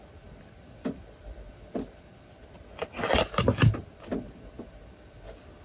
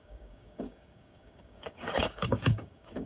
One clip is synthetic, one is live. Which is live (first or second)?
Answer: first